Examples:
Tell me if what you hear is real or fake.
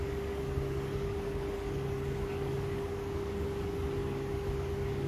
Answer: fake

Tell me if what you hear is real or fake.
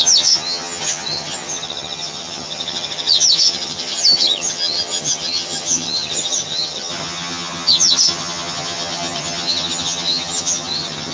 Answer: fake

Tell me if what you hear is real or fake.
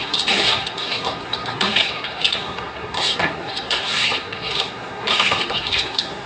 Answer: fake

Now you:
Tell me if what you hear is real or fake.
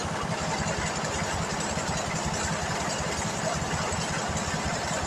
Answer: real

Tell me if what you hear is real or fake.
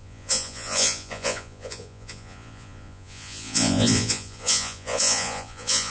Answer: fake